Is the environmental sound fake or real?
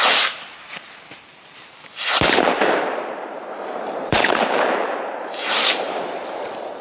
fake